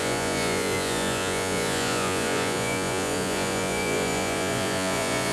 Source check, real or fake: fake